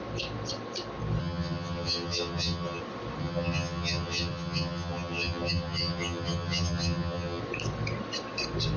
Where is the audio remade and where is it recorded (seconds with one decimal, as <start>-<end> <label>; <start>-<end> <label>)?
0.0-1.2 recorded; 1.2-2.8 remade; 2.8-3.2 recorded; 3.2-7.4 remade; 7.4-8.8 recorded